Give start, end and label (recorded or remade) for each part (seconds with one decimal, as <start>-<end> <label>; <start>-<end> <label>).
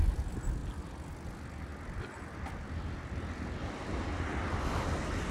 0.0-5.3 recorded